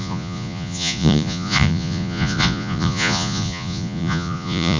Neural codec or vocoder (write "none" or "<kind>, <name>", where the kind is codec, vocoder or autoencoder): vocoder, Vocos